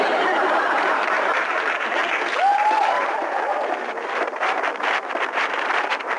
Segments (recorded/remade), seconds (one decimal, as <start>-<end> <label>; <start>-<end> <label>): 0.0-2.0 remade; 2.0-3.0 recorded; 3.0-6.2 remade